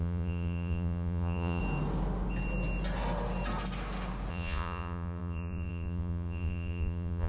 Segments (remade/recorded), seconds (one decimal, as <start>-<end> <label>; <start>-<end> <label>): 0.0-1.6 remade; 1.6-4.3 recorded; 4.3-7.3 remade

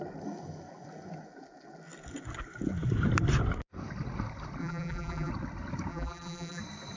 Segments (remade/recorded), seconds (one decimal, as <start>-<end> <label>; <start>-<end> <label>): 0.0-4.6 recorded; 4.6-5.3 remade; 5.3-5.9 recorded; 5.9-6.6 remade; 6.6-7.0 recorded

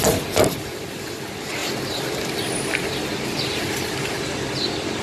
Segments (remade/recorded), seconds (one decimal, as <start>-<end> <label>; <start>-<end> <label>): 0.0-5.0 recorded